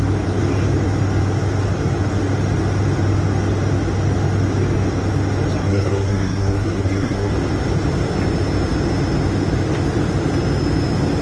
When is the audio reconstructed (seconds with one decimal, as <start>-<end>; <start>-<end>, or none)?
5.6-7.3